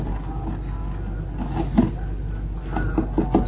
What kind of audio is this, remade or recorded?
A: recorded